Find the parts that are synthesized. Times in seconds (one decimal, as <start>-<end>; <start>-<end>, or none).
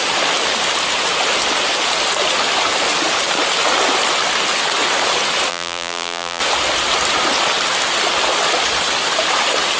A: 5.5-6.4